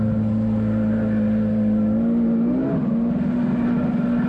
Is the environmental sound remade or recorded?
recorded